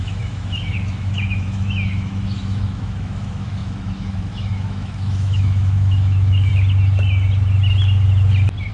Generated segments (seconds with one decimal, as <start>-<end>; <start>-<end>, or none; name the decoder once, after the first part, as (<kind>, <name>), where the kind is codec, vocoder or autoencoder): 0.0-6.5 (autoencoder, DAC-VAE)